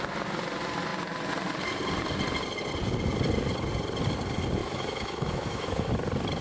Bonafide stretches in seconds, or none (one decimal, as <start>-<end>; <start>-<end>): 0.0-4.6; 5.9-6.4